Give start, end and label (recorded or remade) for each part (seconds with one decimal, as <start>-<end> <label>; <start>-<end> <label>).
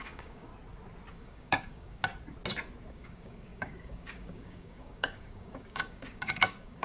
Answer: 0.0-0.5 remade; 0.5-1.1 recorded; 1.1-2.0 remade; 2.0-2.9 recorded; 2.9-6.8 remade